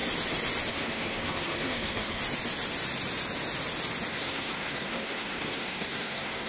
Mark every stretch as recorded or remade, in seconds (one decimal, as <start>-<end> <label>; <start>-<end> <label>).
0.0-0.7 recorded; 0.7-2.2 remade; 2.2-4.1 recorded; 4.1-6.5 remade